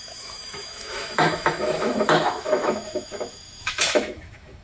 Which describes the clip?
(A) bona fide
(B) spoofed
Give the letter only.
B